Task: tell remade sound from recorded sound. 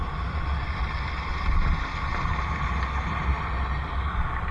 recorded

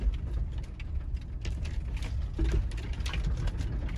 recorded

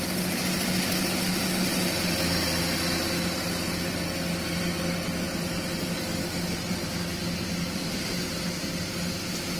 recorded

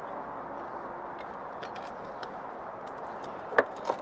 recorded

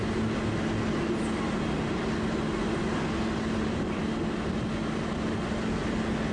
recorded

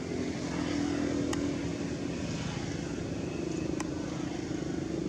recorded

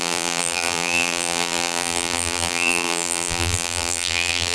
remade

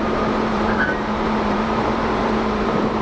remade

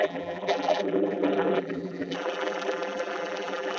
remade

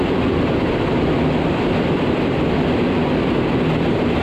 remade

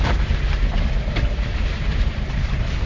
remade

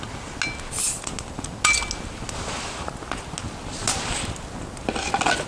recorded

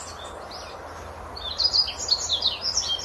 recorded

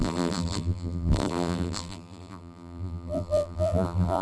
remade